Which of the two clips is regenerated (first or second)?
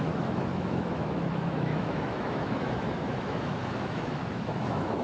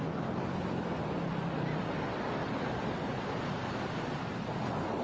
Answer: first